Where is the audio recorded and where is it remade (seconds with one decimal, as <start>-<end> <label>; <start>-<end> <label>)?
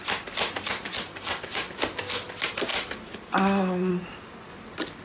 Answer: 0.0-1.1 recorded; 1.1-1.7 remade; 1.7-5.0 recorded